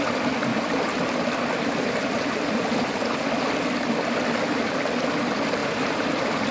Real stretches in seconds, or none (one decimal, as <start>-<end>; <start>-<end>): 0.0-0.5; 3.5-5.6